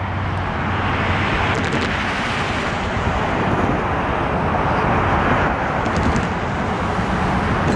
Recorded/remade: recorded